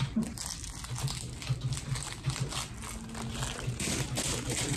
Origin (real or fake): real